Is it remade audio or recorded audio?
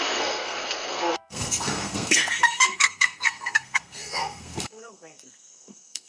remade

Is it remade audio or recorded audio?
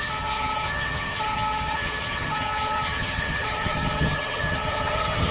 remade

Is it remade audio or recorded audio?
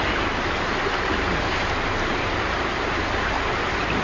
recorded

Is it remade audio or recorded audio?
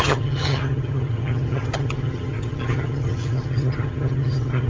remade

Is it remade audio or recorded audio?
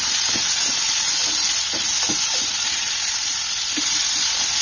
recorded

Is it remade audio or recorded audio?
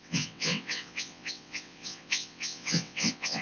remade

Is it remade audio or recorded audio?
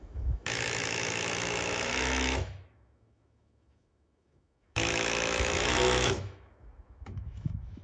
remade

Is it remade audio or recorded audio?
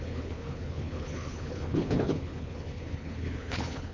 remade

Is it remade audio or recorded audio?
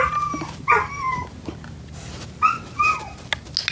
recorded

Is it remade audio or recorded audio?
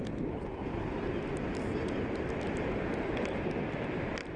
recorded